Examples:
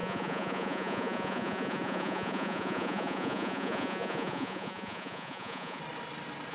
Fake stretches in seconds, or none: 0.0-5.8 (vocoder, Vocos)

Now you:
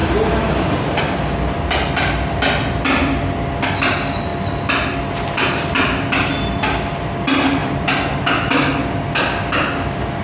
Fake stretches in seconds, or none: none